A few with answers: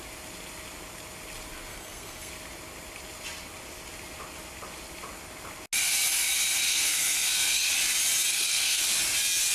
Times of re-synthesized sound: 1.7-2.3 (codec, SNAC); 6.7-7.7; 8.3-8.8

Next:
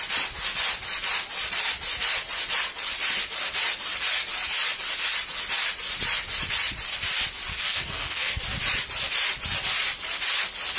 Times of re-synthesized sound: 7.5-8.4 (codec, SNAC)

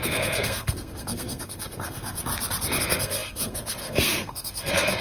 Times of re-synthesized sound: 0.0-2.3 (codec, SNAC); 2.8-5.0

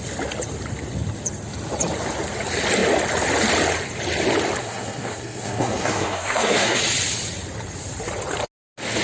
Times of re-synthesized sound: 4.6-6.8 (codec, SNAC)